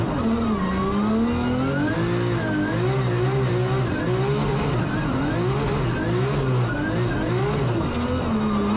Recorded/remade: recorded